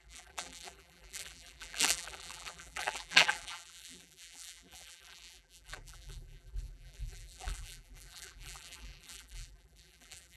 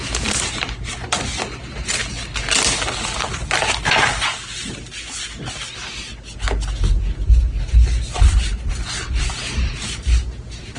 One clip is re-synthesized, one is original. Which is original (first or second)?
second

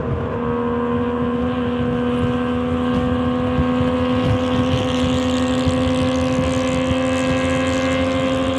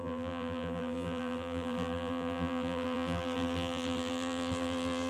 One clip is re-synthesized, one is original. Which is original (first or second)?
first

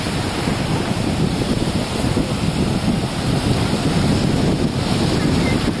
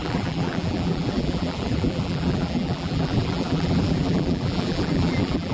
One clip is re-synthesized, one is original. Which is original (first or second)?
first